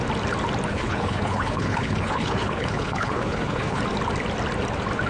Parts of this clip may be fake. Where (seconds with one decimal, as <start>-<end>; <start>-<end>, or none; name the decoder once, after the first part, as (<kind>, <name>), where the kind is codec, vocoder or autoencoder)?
0.7-3.8 (codec, HILCodec)